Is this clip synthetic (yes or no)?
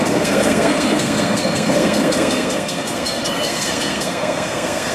yes